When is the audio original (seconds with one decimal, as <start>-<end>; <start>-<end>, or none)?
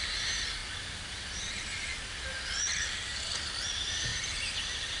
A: 0.0-5.0